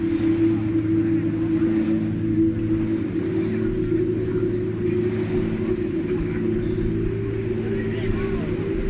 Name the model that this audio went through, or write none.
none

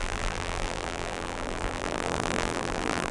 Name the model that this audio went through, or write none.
vocoder, BigVGAN v2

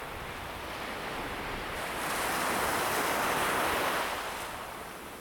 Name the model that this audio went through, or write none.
none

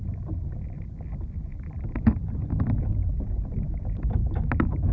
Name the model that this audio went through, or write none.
none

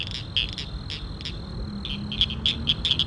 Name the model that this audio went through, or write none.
none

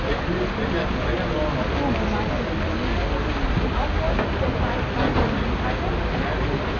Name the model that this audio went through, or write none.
none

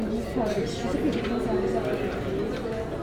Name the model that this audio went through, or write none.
none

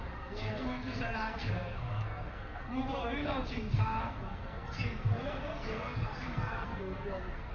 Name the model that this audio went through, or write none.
codec, SNAC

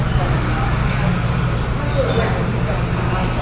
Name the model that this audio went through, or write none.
none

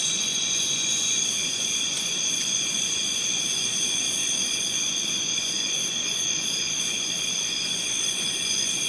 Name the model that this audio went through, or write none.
vocoder, Vocos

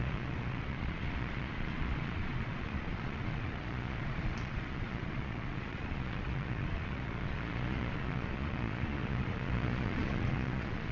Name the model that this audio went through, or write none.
vocoder, Vocos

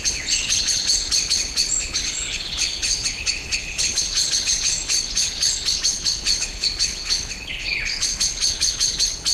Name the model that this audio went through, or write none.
codec, HILCodec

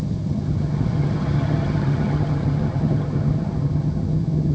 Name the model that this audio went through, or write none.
vocoder, HiFi-GAN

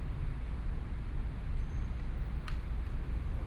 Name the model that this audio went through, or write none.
none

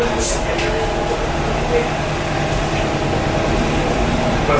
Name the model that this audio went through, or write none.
none